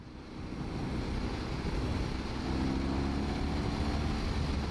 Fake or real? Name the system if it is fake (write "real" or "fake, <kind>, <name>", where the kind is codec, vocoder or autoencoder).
real